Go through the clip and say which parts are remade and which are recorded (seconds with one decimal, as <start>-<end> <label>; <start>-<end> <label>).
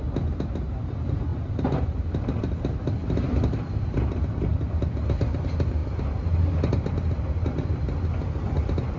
0.0-9.0 recorded